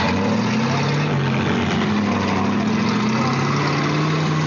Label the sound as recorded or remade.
recorded